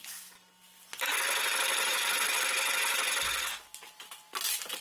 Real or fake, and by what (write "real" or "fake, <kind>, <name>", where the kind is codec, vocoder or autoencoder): real